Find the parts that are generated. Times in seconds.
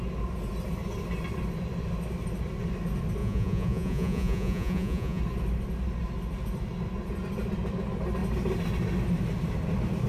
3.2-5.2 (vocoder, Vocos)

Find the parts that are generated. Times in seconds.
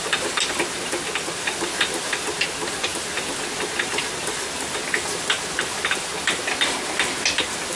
none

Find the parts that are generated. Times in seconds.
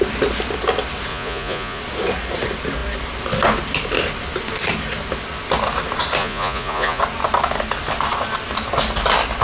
1.1-1.8 (vocoder, Vocos); 6.2-7.0